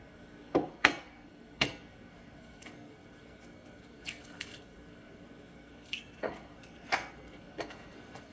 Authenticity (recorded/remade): remade